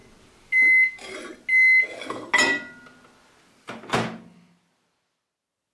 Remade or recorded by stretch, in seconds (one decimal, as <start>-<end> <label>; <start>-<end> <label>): 0.0-5.7 recorded